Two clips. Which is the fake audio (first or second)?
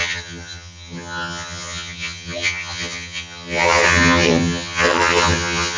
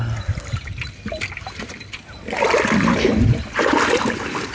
first